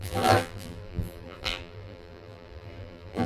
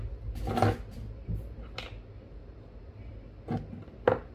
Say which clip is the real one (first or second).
second